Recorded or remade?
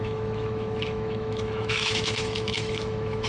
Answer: remade